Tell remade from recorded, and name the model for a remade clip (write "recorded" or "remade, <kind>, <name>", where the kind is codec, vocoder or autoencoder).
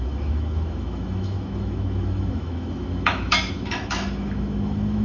remade, autoencoder, DAC-VAE